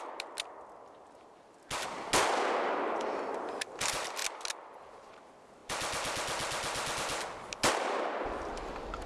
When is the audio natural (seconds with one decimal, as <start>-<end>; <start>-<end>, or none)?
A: 0.0-9.1